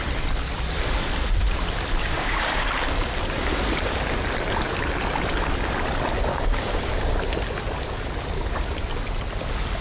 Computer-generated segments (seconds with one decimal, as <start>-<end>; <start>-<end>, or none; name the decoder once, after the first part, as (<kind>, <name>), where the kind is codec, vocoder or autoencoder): 2.0-2.7 (codec, DAC); 6.3-7.1